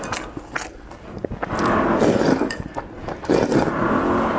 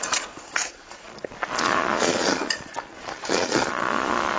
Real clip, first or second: first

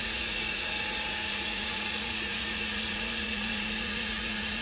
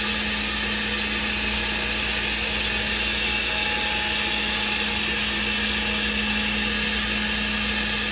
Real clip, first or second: second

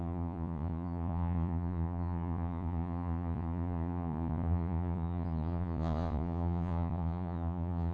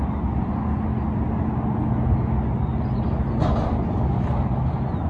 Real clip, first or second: second